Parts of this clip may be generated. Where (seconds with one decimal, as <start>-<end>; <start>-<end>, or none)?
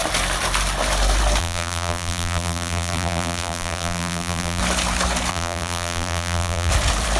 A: 1.4-4.6; 5.3-6.7